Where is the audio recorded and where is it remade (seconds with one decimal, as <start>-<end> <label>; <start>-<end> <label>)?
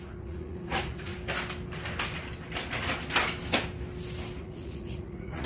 0.0-1.1 remade; 1.1-4.4 recorded; 4.4-5.5 remade